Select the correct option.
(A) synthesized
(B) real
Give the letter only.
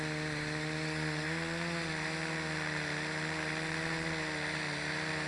B